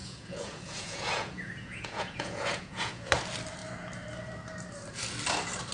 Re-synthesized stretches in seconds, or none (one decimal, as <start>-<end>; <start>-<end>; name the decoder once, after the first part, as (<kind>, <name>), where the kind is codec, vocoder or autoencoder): 0.0-3.1 (vocoder, Vocos)